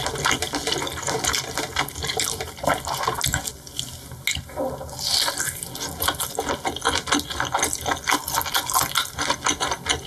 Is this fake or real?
real